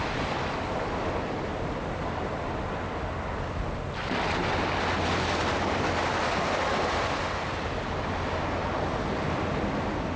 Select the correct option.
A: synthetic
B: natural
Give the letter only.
B